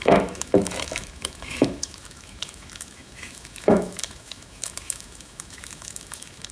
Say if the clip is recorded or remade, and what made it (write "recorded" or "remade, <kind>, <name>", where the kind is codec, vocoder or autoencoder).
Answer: remade, autoencoder, DAC-VAE